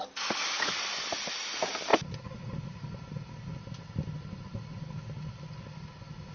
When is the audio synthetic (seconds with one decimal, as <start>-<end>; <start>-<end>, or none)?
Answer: none